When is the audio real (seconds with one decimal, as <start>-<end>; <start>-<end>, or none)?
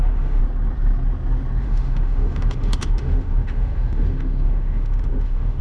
0.4-1.6